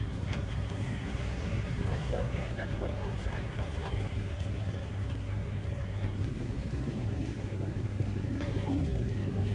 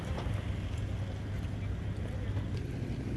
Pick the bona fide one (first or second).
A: second